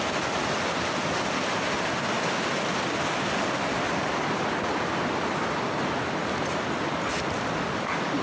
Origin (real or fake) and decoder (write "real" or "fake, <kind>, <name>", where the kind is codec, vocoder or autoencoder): real